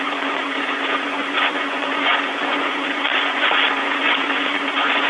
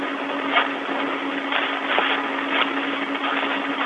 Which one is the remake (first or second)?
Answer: first